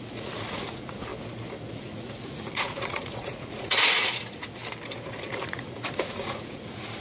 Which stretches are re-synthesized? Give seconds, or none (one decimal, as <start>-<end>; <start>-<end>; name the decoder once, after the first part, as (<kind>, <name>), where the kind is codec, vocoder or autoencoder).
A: 0.0-1.1 (vocoder, Vocos); 1.7-4.6; 5.1-7.0